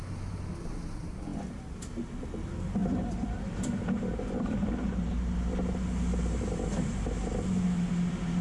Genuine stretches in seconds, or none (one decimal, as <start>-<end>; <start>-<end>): 0.0-1.3; 1.8-2.8; 4.7-8.4